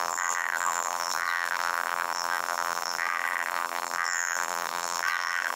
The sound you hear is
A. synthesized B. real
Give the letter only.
A